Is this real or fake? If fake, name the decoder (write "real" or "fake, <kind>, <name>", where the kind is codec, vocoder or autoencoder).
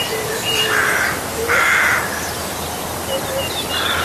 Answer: real